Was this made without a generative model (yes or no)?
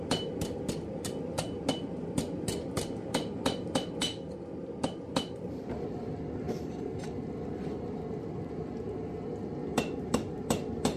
yes